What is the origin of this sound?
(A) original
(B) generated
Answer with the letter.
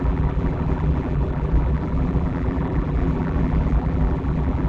B